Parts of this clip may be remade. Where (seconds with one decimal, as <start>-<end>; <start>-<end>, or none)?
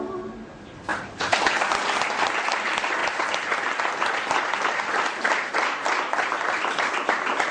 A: 0.9-1.6